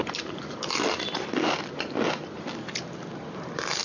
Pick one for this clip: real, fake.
real